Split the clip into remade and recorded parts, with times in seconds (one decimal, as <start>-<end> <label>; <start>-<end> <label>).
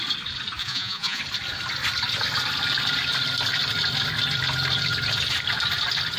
0.0-0.6 recorded; 0.6-1.2 remade; 1.2-6.2 recorded